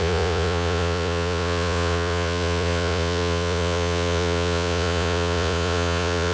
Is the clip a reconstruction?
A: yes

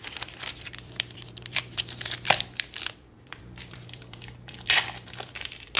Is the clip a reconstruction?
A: yes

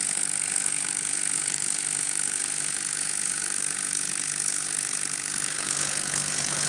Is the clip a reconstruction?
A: yes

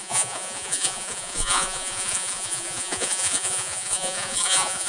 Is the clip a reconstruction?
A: yes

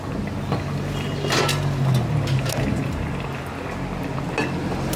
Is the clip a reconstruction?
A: no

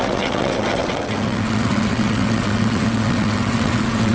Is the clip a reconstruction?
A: yes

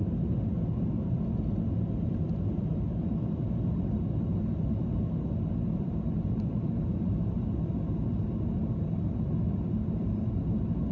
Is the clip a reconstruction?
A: yes